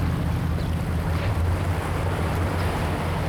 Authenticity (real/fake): real